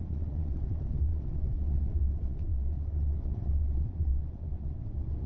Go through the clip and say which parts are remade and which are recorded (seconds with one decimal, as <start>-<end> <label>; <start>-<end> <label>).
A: 0.0-5.3 remade